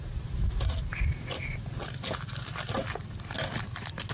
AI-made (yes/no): no